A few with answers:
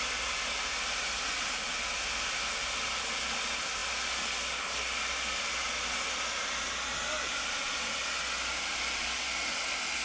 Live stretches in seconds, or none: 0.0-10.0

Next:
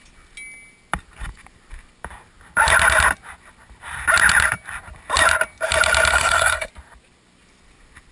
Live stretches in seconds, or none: 0.0-6.1; 6.7-8.1

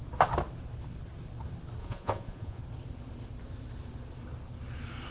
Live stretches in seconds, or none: 0.0-1.8; 2.6-5.1